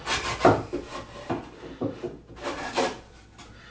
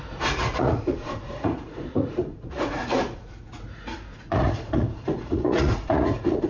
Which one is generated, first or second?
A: second